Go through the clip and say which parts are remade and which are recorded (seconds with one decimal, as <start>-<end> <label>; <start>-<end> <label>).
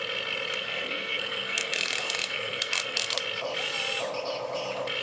0.0-0.6 recorded; 0.6-3.1 remade; 3.1-5.0 recorded